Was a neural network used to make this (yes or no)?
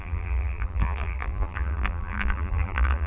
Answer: yes